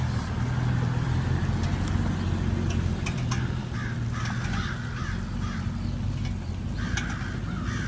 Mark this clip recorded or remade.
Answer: recorded